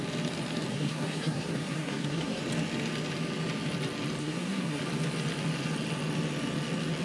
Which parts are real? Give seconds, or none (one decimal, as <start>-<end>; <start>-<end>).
0.0-0.7; 2.4-4.2; 4.8-7.0